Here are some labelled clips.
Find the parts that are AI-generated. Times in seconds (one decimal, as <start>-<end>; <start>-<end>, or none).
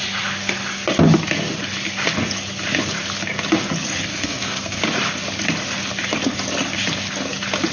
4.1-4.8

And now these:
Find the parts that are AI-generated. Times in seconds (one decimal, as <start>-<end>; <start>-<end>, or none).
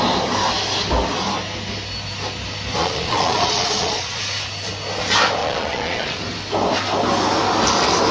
2.8-4.2; 5.4-6.2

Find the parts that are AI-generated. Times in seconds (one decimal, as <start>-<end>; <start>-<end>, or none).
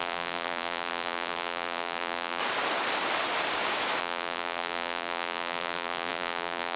0.0-2.4; 4.0-6.8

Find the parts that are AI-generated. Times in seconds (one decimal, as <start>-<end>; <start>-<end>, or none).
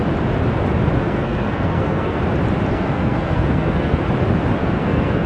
1.0-2.2; 2.7-4.0; 4.6-5.3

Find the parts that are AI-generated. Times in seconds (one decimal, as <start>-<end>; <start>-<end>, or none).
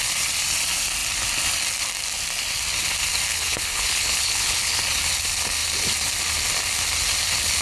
3.3-4.8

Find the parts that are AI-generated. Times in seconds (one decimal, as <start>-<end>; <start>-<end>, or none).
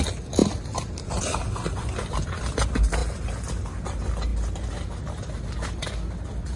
none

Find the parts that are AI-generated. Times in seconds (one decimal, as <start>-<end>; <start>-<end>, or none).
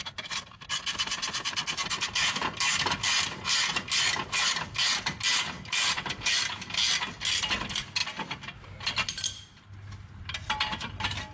none